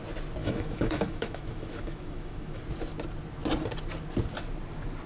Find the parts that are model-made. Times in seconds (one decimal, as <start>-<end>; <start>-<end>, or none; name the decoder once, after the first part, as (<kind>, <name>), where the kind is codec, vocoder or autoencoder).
0.4-2.6 (autoencoder, DAC-VAE)

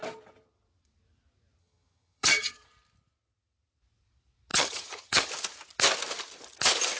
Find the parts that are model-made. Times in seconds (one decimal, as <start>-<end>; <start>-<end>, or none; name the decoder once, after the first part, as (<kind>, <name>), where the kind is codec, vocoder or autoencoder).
1.6-2.7 (vocoder, HiFi-GAN); 4.5-5.3

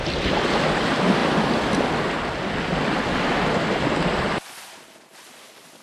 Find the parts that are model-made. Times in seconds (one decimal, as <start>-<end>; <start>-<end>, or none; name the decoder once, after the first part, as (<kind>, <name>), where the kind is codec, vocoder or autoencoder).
none

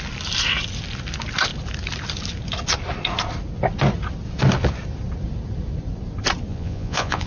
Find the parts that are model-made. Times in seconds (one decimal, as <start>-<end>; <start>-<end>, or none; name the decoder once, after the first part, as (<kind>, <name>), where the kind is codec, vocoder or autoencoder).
6.5-7.3 (vocoder, Vocos)

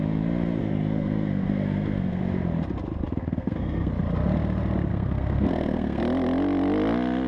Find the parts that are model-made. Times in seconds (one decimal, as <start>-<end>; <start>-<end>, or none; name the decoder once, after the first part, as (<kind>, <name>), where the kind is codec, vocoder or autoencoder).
0.6-2.2 (codec, SNAC); 3.2-3.9; 4.9-6.0